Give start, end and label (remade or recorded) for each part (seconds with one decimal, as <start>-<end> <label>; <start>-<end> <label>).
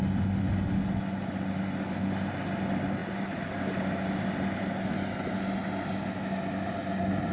0.0-7.3 recorded